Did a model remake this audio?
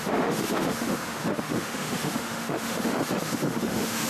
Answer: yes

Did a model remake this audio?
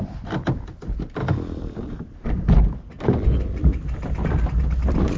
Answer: no